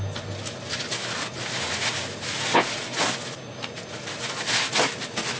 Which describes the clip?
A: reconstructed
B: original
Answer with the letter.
B